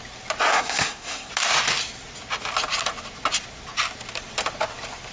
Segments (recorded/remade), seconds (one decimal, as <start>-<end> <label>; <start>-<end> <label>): 0.0-0.5 recorded; 0.5-1.3 remade; 1.3-5.1 recorded